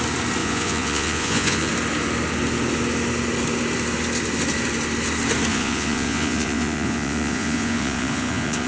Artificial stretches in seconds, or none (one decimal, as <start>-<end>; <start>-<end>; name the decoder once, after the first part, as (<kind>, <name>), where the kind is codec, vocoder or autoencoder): 0.4-1.7 (vocoder, Vocos); 5.5-8.7

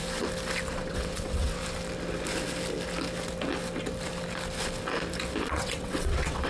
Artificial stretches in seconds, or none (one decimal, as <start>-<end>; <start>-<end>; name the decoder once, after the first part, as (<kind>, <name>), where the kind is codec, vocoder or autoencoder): 0.7-1.6 (vocoder, WaveNeXt); 5.4-6.5

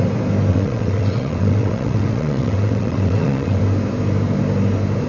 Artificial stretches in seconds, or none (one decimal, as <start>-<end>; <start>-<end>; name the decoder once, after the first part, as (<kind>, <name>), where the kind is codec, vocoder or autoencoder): 0.5-3.6 (vocoder, WaveNeXt)

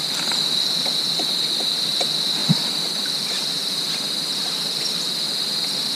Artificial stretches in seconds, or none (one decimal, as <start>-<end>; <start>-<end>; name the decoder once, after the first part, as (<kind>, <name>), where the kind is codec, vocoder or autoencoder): none

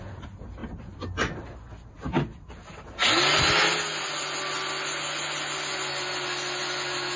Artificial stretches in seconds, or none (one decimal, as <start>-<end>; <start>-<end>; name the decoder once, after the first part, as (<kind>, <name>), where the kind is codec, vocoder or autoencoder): none